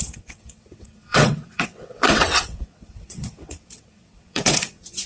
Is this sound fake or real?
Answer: fake